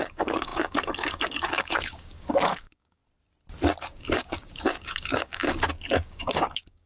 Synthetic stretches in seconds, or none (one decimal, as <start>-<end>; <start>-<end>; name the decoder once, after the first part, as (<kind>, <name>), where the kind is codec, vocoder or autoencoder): 0.0-3.0 (codec, DAC); 3.8-6.9